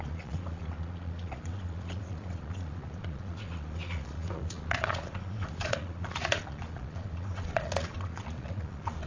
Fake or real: fake